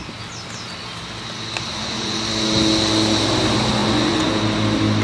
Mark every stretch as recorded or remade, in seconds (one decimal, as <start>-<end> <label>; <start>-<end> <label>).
0.0-1.7 recorded; 1.7-2.2 remade; 2.2-3.8 recorded; 3.8-4.3 remade; 4.3-5.0 recorded